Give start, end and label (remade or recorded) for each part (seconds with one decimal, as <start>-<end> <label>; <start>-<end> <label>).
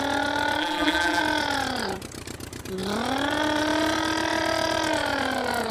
0.0-0.6 recorded; 0.6-1.2 remade; 1.2-5.7 recorded